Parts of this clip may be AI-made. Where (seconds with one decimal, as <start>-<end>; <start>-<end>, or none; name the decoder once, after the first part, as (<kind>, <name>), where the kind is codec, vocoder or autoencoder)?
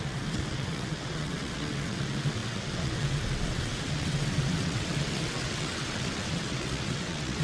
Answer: 0.0-7.4 (vocoder, WaveNeXt)